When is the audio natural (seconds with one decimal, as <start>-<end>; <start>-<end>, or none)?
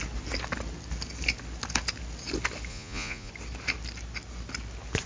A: 0.0-2.7; 3.3-5.1